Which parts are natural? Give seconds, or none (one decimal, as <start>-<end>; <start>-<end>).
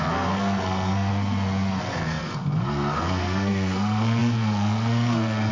1.1-1.8